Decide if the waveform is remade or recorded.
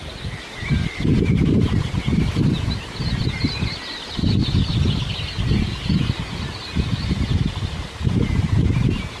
recorded